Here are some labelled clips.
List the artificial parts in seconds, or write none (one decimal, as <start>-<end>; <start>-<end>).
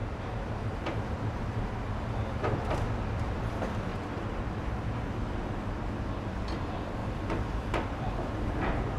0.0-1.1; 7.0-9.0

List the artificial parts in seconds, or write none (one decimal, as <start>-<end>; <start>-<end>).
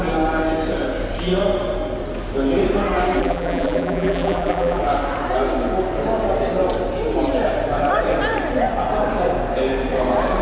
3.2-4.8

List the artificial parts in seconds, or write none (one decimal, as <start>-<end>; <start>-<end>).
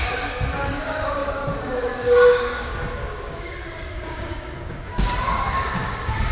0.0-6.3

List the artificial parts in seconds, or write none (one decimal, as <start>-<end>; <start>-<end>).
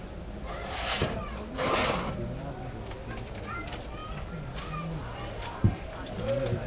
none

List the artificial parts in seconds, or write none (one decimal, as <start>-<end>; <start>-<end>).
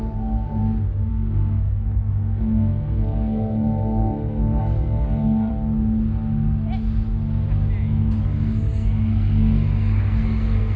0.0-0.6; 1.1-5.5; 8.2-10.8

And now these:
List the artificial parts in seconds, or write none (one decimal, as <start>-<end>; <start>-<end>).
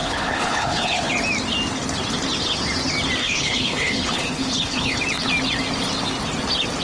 0.0-1.1; 3.2-5.0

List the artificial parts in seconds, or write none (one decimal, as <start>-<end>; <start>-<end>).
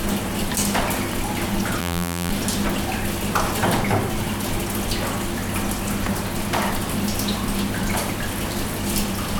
1.8-2.3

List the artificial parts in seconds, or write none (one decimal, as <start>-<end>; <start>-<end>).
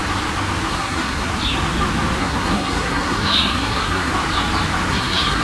0.7-1.3; 2.2-4.1; 4.9-5.4